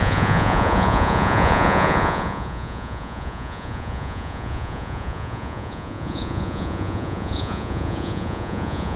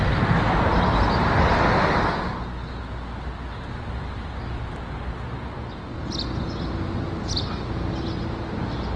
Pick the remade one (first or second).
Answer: first